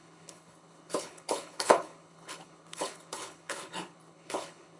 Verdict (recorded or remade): remade